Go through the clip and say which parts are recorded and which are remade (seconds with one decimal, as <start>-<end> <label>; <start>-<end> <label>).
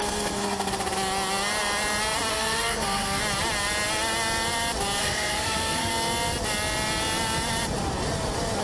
0.0-0.7 remade; 0.7-2.3 recorded; 2.3-3.2 remade; 3.2-5.0 recorded; 5.0-5.9 remade; 5.9-8.6 recorded